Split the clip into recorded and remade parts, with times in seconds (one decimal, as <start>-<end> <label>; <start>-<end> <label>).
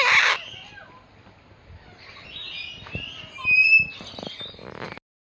0.0-5.3 recorded